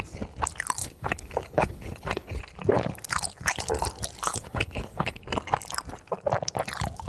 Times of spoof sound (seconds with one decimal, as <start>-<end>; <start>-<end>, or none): 0.8-2.4; 4.3-5.2